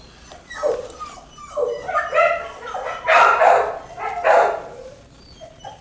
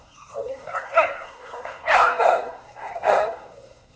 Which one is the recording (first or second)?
first